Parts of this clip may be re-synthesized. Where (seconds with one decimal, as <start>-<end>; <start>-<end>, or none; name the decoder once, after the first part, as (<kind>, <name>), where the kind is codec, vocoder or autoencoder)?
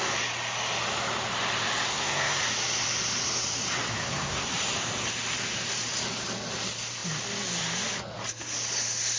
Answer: 1.9-2.4 (codec, SNAC); 4.0-4.5